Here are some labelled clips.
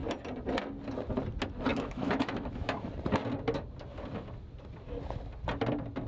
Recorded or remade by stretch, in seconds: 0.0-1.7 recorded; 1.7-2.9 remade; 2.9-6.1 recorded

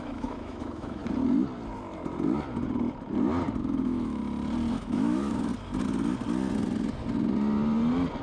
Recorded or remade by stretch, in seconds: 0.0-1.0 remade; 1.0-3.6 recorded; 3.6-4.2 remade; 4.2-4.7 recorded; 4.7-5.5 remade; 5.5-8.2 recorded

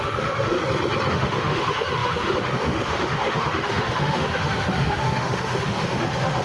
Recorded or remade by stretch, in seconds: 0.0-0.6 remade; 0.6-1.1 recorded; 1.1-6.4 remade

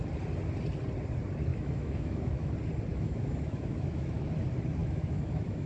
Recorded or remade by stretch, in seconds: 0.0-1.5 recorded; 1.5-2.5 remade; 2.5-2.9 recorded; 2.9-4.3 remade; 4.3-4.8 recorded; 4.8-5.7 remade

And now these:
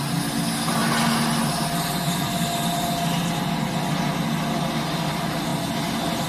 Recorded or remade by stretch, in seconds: 0.0-6.3 recorded